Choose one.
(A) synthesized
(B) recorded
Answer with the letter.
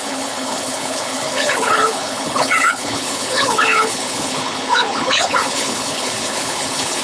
A